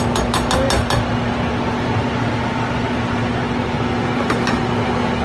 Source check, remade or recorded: recorded